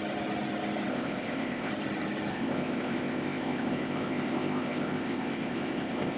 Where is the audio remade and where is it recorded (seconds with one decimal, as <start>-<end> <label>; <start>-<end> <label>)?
0.0-0.9 recorded; 0.9-1.7 remade; 1.7-2.3 recorded; 2.3-6.2 remade